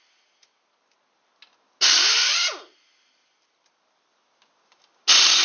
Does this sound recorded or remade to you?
recorded